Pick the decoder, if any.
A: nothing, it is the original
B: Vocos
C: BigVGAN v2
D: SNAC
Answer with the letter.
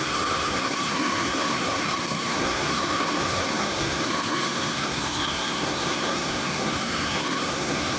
D